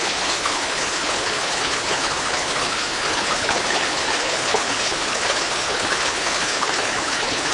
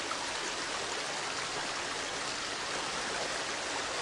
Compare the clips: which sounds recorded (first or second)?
second